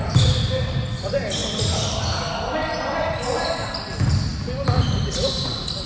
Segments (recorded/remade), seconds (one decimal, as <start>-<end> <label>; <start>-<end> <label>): 0.0-5.9 recorded